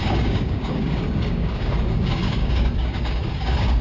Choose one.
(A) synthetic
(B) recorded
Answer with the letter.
A